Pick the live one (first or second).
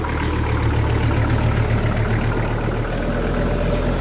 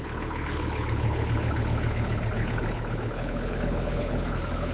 first